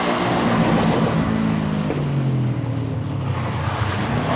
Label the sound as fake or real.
real